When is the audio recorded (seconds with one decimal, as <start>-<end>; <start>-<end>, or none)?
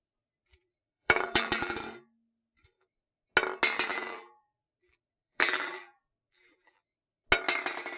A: 0.0-0.4; 1.8-3.9; 6.8-8.0